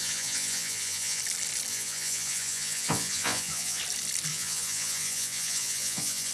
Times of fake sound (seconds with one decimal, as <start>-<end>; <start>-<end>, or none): 0.0-1.2; 1.7-3.8; 4.3-6.3